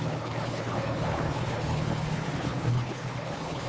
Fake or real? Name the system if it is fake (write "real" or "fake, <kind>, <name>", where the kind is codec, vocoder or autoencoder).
fake, codec, HILCodec